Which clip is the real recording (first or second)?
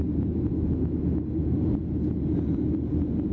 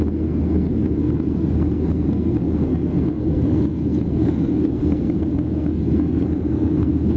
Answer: first